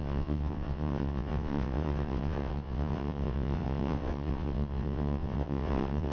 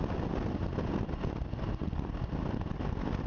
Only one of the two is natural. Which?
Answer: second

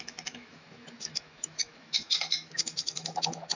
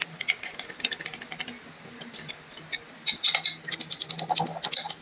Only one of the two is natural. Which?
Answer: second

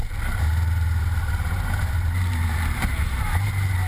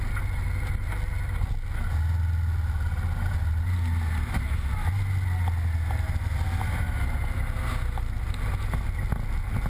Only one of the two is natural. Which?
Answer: second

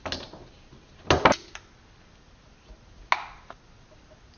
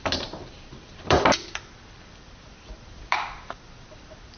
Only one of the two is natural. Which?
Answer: first